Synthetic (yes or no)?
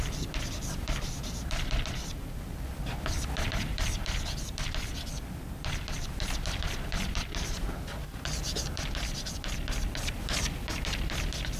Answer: yes